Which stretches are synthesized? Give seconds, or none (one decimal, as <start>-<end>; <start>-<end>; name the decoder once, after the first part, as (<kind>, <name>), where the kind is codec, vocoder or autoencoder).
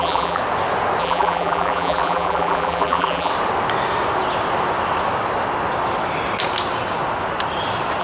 0.0-0.4 (vocoder, BigVGAN v2); 1.0-3.3